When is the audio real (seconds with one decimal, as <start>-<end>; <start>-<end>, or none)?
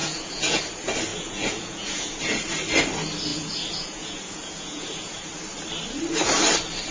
0.6-1.1; 2.2-3.3; 5.3-6.9